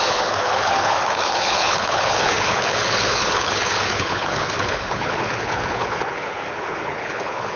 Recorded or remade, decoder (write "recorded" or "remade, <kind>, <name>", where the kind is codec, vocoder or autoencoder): remade, codec, HILCodec